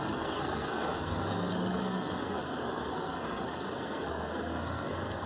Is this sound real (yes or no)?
no